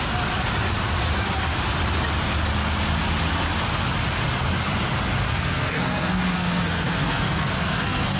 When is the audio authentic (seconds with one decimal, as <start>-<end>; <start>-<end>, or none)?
0.0-5.3